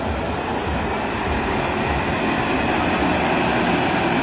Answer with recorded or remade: recorded